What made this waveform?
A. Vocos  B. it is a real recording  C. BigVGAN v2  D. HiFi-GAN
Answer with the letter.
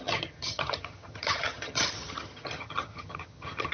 D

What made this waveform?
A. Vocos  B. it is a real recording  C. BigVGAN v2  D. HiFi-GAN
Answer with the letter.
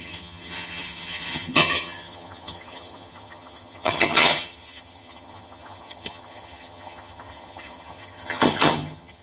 D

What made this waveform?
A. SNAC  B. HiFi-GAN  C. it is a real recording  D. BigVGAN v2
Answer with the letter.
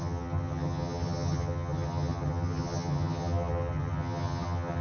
B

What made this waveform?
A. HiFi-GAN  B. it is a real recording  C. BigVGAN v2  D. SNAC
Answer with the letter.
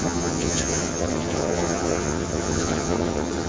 A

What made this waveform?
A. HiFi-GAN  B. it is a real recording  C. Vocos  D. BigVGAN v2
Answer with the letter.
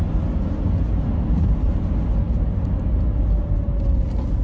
B